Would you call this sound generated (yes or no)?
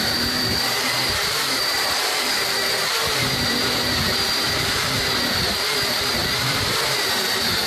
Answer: yes